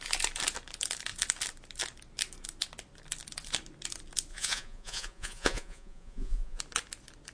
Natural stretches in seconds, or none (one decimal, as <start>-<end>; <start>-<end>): 0.0-4.3; 6.6-7.3